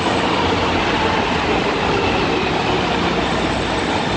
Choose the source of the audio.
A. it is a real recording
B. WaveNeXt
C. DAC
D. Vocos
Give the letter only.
A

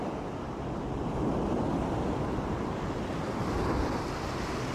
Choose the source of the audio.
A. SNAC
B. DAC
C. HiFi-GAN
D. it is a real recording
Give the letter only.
D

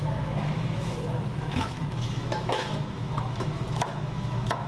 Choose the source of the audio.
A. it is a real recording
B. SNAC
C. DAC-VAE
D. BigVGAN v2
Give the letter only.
C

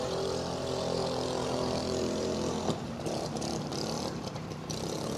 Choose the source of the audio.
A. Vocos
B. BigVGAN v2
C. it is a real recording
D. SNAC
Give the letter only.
B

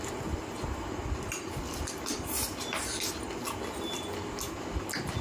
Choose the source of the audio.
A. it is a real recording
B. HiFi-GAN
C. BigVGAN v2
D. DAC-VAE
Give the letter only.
A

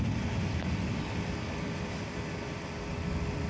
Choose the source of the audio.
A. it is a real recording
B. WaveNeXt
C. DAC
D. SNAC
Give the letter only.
A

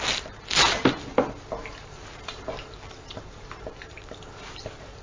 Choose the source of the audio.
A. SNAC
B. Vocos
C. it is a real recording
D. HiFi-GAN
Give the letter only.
C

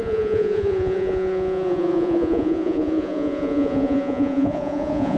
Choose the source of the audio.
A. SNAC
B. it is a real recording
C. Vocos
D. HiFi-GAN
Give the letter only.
C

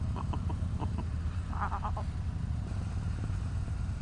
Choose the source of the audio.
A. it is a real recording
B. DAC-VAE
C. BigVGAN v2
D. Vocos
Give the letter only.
C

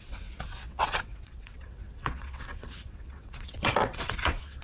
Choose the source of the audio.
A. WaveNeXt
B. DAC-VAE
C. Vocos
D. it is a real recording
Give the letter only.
A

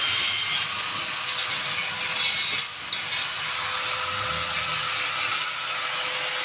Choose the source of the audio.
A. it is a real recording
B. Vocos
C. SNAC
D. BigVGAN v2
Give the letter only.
A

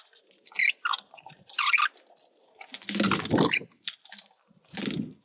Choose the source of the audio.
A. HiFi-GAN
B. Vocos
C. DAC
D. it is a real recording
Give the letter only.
D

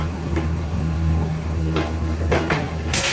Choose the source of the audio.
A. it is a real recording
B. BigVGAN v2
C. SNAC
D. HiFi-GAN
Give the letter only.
C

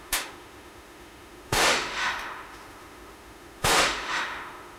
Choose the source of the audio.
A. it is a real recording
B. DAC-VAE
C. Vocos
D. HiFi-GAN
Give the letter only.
B